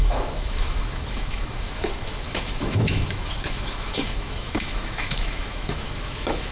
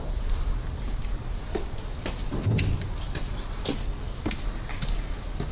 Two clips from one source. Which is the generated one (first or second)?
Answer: first